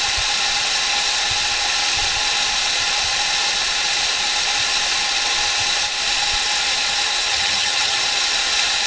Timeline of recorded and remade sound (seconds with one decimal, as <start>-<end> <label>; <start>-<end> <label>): 0.0-7.3 recorded; 7.3-8.0 remade; 8.0-8.9 recorded